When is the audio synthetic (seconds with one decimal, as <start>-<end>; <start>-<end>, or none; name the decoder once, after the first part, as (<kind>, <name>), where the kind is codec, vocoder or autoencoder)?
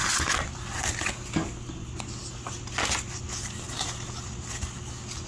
none